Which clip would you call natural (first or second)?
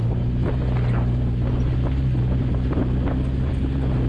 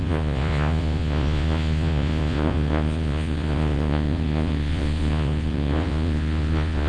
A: first